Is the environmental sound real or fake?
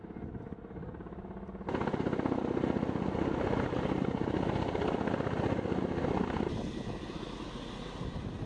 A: real